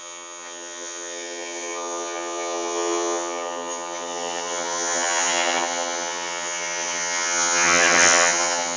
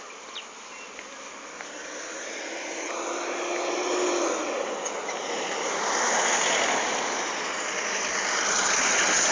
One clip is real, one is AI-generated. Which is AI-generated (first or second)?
first